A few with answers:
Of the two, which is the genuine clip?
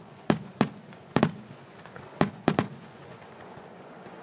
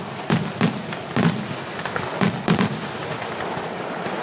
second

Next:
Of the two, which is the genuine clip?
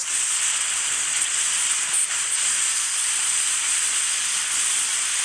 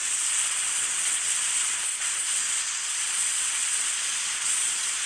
first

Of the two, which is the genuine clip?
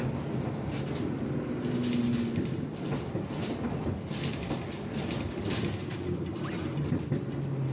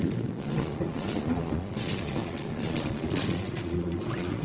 first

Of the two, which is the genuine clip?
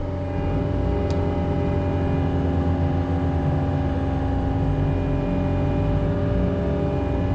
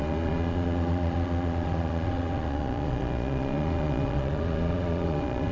first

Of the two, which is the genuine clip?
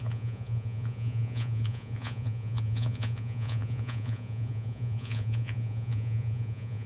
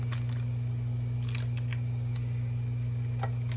second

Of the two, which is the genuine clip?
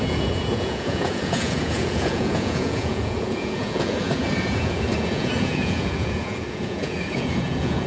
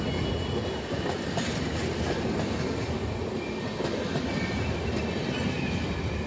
second